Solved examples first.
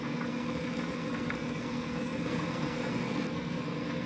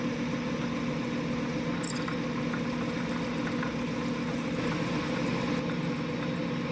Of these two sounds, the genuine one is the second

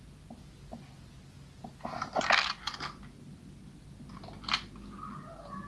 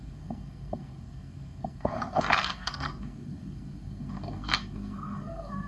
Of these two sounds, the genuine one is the first